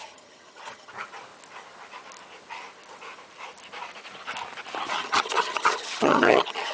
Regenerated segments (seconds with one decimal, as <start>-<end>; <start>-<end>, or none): 0.0-0.9; 4.9-6.7